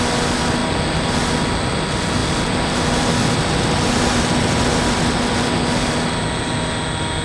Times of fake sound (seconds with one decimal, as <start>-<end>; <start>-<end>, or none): none